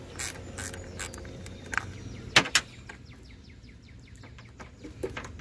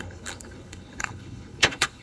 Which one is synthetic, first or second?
second